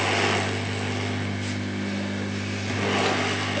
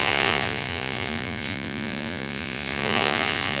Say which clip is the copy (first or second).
second